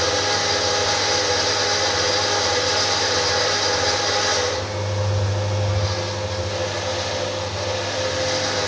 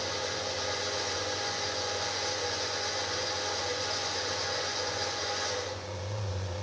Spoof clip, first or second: second